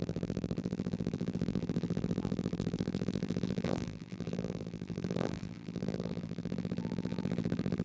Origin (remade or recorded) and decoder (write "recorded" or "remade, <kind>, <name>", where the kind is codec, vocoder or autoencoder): remade, vocoder, BigVGAN v2